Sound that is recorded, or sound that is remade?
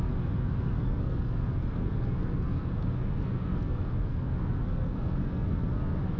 remade